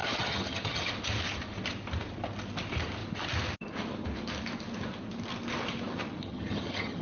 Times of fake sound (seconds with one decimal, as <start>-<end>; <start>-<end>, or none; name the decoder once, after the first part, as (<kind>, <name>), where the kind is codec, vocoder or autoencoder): 0.0-0.9 (vocoder, HiFi-GAN); 6.2-7.0